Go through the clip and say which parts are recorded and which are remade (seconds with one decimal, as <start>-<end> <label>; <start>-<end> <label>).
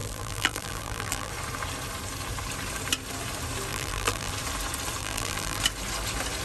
0.0-1.3 remade; 1.3-3.7 recorded; 3.7-4.3 remade; 4.3-5.0 recorded; 5.0-5.6 remade; 5.6-6.4 recorded